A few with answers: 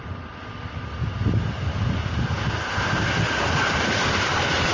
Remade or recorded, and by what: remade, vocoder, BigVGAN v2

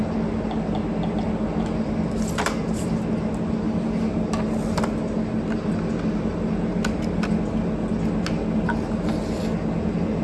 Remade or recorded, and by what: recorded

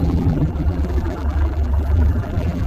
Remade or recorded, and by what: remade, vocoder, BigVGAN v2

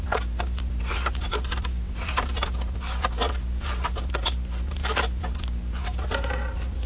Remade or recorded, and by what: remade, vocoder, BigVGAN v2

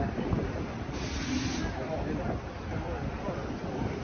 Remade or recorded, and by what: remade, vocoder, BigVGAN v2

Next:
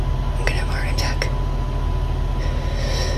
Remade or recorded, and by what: recorded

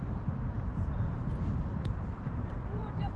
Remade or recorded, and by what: remade, vocoder, BigVGAN v2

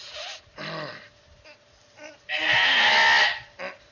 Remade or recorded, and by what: recorded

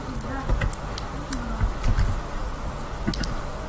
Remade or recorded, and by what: recorded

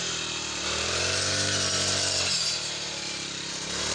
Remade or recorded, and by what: remade, vocoder, BigVGAN v2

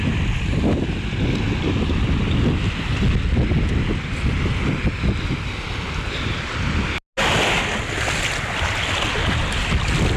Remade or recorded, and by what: recorded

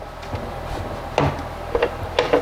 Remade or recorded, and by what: recorded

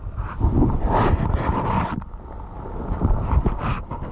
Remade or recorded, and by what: recorded